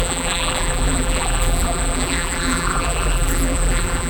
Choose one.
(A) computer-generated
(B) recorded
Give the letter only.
A